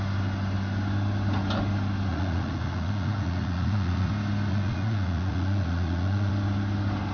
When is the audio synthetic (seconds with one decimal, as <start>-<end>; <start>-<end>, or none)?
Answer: 2.1-4.1; 4.5-6.3